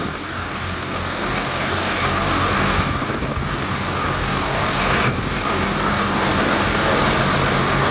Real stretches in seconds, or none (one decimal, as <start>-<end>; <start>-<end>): 7.0-7.5